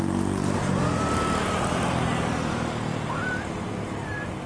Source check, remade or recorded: recorded